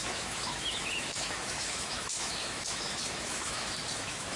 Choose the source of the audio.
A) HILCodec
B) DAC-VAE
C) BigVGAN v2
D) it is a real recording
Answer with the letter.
B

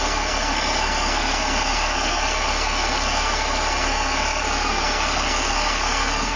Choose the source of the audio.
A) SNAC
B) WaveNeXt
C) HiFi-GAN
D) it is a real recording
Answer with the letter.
A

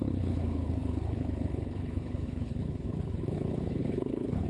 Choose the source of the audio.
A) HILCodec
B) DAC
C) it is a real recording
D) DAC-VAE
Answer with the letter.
A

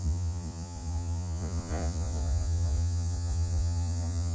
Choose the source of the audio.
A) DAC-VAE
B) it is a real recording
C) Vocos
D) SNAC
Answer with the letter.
C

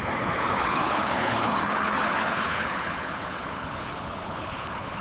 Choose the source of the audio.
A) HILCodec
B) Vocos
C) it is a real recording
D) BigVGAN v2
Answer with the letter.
A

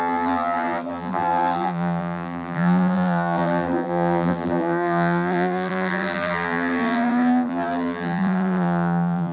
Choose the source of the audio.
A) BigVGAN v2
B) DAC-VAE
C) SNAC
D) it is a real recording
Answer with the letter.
A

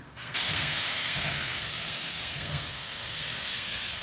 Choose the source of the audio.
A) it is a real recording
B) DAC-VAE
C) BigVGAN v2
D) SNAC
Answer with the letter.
D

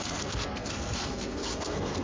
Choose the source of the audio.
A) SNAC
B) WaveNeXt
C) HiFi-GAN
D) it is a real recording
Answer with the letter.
A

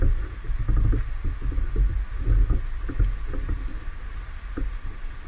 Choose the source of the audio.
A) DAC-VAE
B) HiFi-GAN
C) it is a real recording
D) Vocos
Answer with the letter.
C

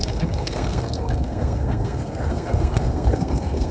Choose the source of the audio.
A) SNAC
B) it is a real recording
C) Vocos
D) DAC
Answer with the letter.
A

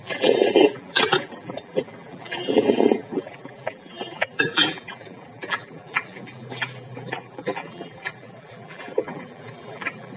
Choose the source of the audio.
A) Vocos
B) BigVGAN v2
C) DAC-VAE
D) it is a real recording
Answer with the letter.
B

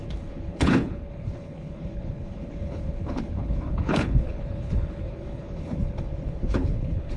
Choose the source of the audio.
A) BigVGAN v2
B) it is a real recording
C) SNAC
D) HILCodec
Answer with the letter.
D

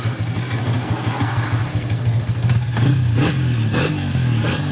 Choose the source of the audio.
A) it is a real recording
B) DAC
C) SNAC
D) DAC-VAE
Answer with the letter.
C